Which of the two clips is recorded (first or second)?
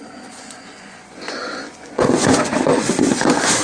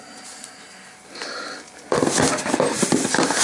second